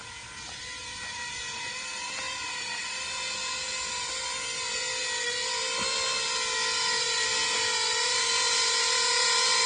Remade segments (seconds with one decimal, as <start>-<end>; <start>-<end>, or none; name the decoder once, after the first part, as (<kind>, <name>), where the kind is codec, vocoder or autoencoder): none